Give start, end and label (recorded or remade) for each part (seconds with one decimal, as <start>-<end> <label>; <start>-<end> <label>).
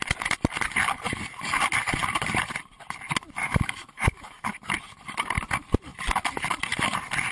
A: 0.0-3.4 recorded; 3.4-4.5 remade; 4.5-7.3 recorded